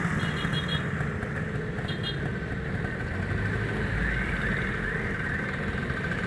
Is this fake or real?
real